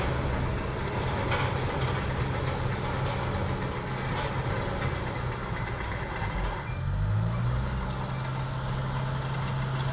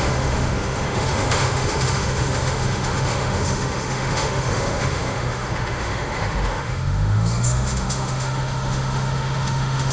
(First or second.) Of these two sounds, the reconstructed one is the second